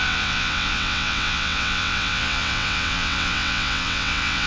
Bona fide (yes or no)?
no